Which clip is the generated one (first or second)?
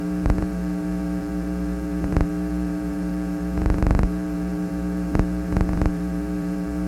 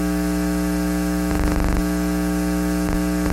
first